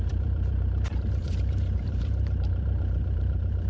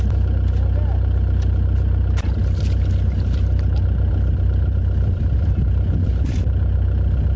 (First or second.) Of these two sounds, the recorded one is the second